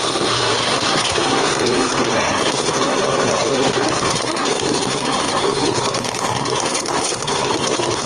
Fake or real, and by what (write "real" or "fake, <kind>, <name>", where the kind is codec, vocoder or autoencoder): fake, codec, SNAC